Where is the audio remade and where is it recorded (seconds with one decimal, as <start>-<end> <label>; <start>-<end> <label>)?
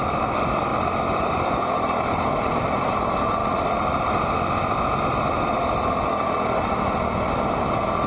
0.0-0.7 remade; 0.7-1.2 recorded; 1.2-3.4 remade; 3.4-8.1 recorded